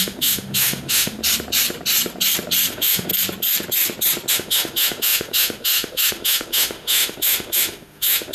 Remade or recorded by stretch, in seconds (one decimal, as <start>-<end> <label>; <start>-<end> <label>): 0.0-1.2 remade; 1.2-2.7 recorded; 2.7-3.1 remade; 3.1-4.3 recorded; 4.3-8.3 remade